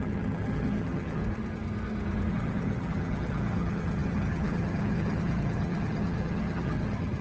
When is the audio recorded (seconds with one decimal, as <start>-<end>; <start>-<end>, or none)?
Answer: 1.2-2.3